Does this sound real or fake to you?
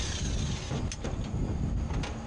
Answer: real